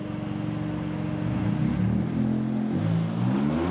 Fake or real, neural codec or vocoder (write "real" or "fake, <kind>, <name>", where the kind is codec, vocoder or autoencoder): real